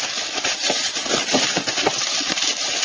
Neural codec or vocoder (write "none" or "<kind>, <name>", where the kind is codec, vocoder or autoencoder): none